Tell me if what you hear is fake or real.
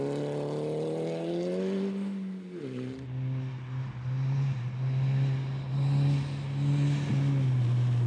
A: real